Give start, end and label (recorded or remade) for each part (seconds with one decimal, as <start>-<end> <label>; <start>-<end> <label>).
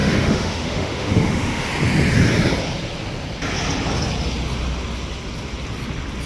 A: 0.0-1.7 remade; 1.7-6.3 recorded